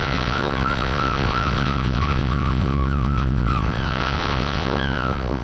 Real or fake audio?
fake